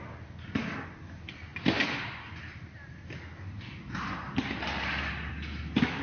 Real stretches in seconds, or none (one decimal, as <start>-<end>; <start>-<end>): 0.0-6.0

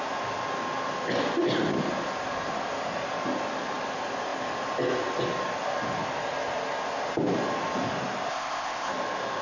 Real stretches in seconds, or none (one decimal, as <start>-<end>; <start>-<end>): 0.0-8.3; 8.9-9.4

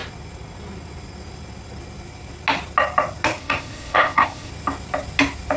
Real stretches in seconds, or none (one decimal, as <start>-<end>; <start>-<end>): 0.0-3.4; 4.5-5.6

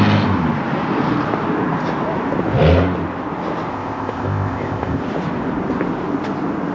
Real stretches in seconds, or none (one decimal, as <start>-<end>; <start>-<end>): 0.0-3.7; 5.0-6.7